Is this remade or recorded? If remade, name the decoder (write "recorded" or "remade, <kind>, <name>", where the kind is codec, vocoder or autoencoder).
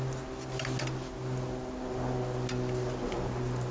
recorded